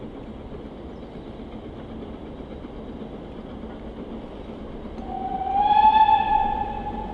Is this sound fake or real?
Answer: real